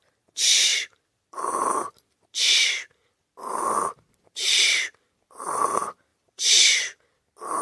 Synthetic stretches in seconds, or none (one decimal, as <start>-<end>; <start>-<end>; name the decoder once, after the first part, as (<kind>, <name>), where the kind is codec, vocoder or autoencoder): 0.7-5.3 (vocoder, BigVGAN v2); 6.1-7.0